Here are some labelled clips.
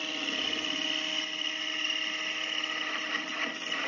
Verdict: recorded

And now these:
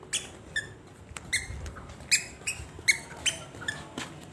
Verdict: recorded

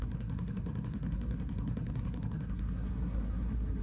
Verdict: remade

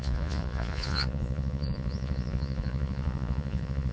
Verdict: remade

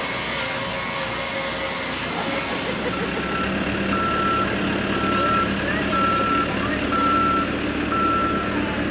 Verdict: recorded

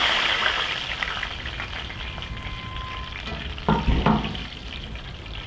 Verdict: recorded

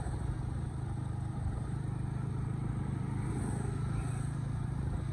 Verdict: remade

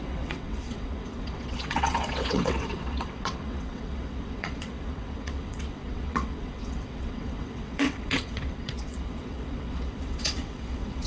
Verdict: remade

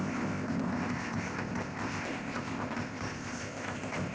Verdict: remade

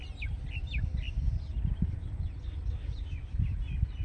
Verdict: recorded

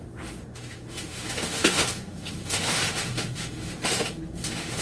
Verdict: remade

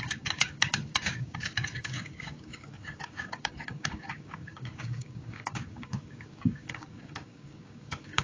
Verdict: remade